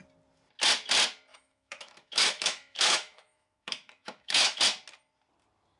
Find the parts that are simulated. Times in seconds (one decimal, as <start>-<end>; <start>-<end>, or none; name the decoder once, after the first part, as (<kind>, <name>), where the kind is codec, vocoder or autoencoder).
1.3-4.6 (autoencoder, DAC-VAE)